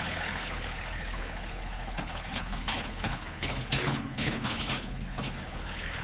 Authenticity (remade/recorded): remade